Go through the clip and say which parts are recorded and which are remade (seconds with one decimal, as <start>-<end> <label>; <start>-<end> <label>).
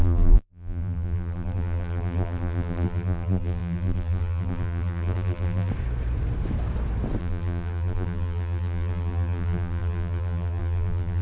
0.0-5.7 remade; 5.7-7.2 recorded; 7.2-11.2 remade